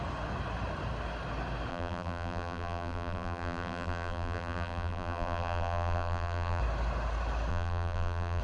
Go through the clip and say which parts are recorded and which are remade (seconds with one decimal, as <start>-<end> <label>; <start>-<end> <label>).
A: 0.0-1.7 recorded; 1.7-6.6 remade; 6.6-7.5 recorded; 7.5-8.4 remade